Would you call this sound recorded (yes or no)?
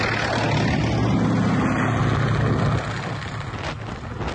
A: yes